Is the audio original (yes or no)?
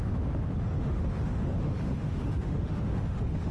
no